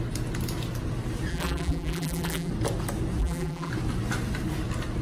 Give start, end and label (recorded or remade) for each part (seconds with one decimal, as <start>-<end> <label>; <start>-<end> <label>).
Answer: 0.0-1.3 recorded; 1.3-2.5 remade; 2.5-3.2 recorded; 3.2-3.7 remade; 3.7-5.0 recorded